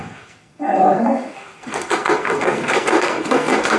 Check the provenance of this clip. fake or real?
fake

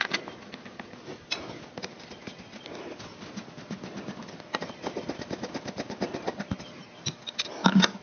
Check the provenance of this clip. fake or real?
real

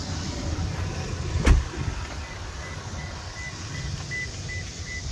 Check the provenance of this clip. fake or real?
real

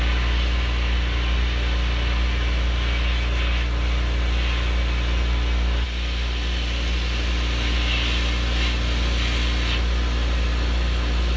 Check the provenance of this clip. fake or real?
real